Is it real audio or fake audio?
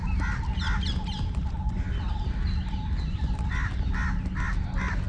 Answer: real